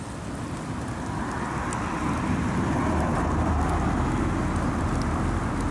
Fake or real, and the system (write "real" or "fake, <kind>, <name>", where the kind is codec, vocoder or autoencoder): real